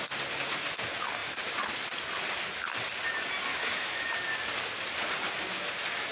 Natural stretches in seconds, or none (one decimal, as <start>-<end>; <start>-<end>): 0.0-3.5; 4.1-6.1